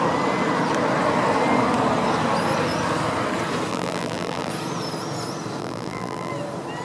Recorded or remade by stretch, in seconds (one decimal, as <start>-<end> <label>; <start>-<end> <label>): 0.0-3.7 recorded; 3.7-4.5 remade; 4.5-5.6 recorded; 5.6-6.3 remade; 6.3-6.8 recorded